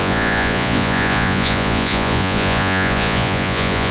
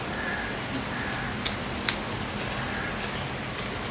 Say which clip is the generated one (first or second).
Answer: first